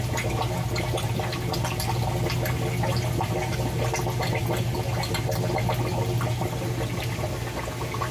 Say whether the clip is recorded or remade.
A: recorded